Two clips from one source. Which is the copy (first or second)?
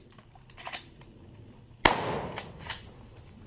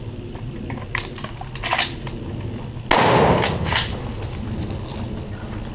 first